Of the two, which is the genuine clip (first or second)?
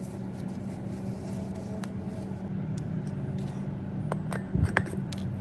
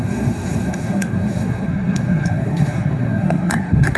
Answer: first